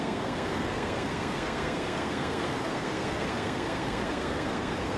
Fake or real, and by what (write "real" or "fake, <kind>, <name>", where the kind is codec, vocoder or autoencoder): fake, codec, SNAC